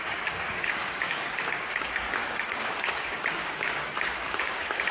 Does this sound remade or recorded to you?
remade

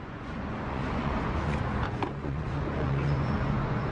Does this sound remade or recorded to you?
remade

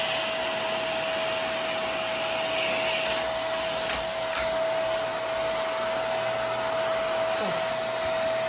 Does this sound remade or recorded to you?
recorded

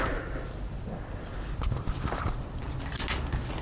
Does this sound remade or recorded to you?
recorded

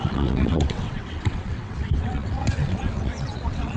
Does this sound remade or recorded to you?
remade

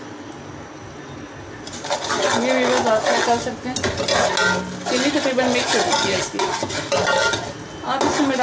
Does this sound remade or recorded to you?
recorded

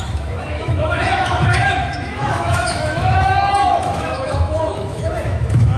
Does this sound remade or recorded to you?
remade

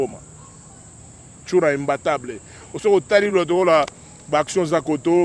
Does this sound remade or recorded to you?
remade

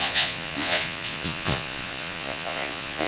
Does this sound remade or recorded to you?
remade